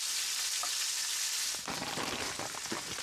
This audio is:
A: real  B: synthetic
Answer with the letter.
A